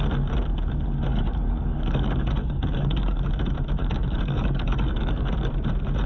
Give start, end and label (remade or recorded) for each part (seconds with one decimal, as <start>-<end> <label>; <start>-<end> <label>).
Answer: 0.0-1.1 recorded; 1.1-3.3 remade; 3.3-3.8 recorded; 3.8-5.5 remade; 5.5-6.1 recorded